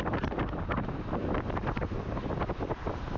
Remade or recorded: recorded